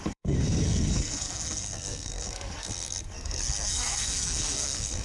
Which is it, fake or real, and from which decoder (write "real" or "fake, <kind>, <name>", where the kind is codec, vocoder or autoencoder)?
fake, codec, SNAC